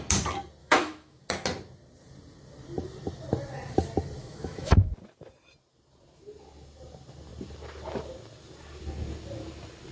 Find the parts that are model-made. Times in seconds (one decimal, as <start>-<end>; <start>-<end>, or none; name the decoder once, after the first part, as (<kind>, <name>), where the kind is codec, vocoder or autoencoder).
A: 0.6-1.2 (autoencoder, DAC-VAE); 4.2-4.9

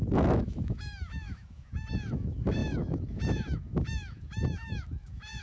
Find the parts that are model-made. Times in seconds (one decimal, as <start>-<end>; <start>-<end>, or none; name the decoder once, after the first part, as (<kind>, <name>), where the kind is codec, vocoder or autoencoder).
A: 0.0-5.4 (autoencoder, DAC-VAE)

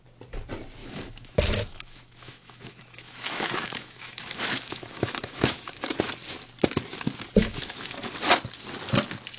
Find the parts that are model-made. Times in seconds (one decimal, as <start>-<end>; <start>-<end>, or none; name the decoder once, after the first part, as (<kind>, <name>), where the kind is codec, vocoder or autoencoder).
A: 0.8-6.0 (autoencoder, DAC-VAE); 7.4-8.0

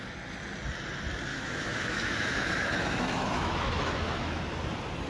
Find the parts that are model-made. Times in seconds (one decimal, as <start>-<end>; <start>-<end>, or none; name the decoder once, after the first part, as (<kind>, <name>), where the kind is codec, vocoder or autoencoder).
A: 1.3-4.4 (autoencoder, DAC-VAE)

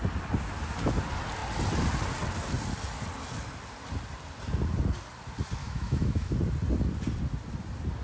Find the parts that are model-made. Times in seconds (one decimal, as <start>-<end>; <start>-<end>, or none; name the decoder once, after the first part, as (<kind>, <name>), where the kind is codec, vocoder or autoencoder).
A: 5.6-6.3 (autoencoder, DAC-VAE)